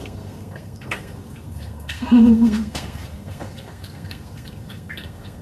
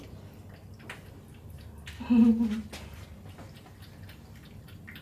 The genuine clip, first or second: second